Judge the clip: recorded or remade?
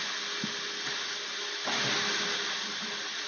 recorded